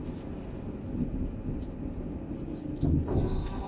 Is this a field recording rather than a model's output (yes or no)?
yes